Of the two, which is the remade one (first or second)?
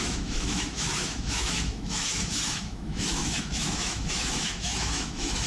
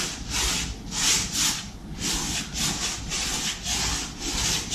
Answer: first